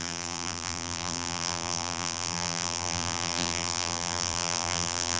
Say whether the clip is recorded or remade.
remade